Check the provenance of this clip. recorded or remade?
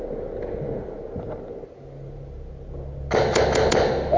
recorded